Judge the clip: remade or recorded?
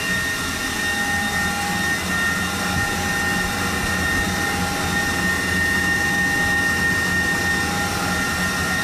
recorded